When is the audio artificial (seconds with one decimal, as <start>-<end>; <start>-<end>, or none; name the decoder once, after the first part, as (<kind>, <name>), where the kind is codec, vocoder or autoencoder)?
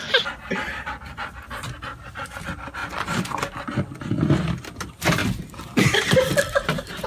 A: 2.8-4.0 (vocoder, BigVGAN v2); 5.2-7.1